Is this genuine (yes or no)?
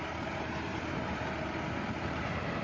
no